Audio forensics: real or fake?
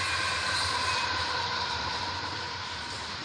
fake